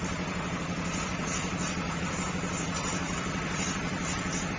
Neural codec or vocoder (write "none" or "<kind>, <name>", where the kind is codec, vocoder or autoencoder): vocoder, BigVGAN v2